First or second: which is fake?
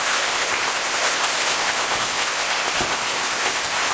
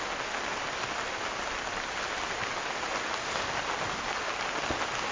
first